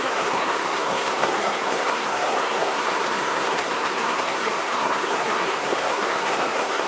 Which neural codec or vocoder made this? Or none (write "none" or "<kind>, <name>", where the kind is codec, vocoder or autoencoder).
codec, SNAC